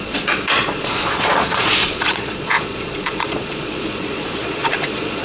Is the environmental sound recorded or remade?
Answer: remade